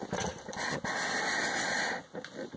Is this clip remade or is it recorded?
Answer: recorded